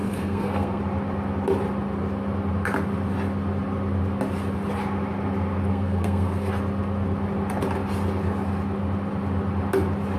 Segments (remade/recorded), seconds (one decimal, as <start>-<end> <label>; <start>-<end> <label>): 0.0-0.8 remade; 0.8-5.7 recorded; 5.7-6.5 remade; 6.5-10.2 recorded